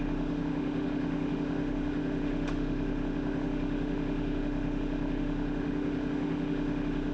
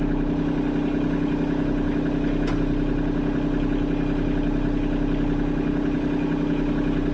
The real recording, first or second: second